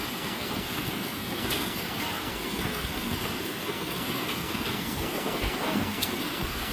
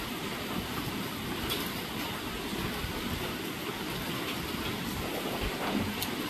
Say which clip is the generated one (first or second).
first